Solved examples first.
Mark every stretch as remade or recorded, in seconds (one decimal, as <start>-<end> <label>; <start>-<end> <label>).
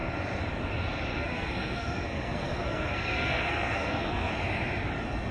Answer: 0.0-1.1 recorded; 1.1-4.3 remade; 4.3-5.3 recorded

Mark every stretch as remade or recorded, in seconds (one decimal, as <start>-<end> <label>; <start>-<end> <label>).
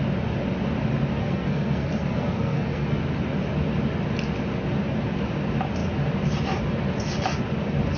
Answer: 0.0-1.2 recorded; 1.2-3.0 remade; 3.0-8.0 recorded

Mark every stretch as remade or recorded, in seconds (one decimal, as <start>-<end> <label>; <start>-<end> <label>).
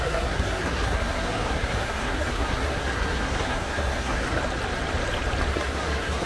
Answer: 0.0-4.4 remade; 4.4-5.5 recorded; 5.5-6.3 remade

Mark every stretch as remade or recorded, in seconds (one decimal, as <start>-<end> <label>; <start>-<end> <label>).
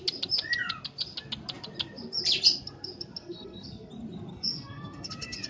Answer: 0.0-3.2 recorded; 3.2-3.9 remade; 3.9-4.3 recorded; 4.3-5.1 remade; 5.1-5.5 recorded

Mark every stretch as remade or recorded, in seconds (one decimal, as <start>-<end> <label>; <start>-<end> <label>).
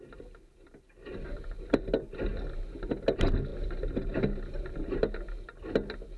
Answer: 0.0-6.2 recorded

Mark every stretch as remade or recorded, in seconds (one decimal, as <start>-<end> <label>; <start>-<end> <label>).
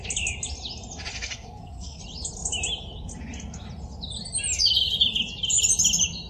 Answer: 0.0-1.1 recorded; 1.1-2.0 remade; 2.0-6.3 recorded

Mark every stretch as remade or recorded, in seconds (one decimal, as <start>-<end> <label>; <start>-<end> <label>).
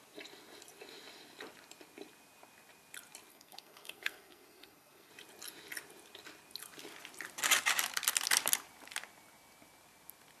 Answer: 0.0-3.3 recorded; 3.3-5.1 remade; 5.1-10.4 recorded